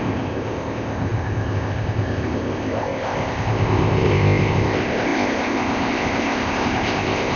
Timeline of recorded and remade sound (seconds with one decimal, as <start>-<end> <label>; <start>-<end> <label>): 0.0-7.4 remade